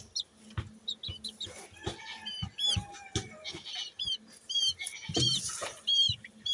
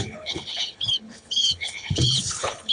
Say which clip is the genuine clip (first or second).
first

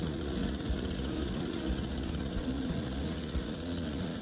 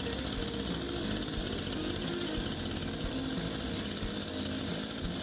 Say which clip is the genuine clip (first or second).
second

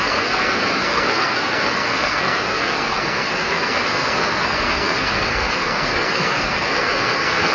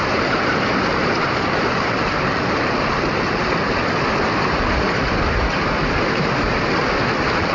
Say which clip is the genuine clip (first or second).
second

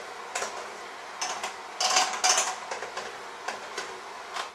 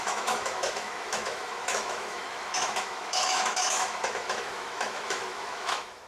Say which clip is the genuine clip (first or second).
first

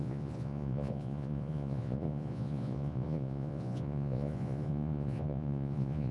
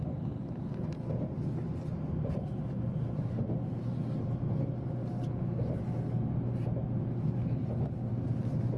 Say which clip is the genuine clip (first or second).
second